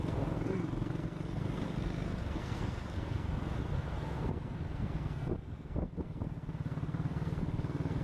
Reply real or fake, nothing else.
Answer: fake